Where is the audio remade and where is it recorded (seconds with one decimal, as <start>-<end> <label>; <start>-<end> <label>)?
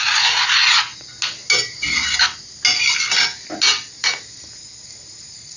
0.0-4.0 recorded; 4.0-5.6 remade